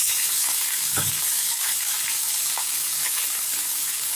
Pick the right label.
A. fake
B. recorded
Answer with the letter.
A